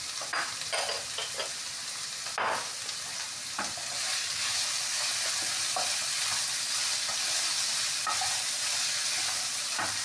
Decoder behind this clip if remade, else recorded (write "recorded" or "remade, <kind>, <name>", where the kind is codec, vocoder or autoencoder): recorded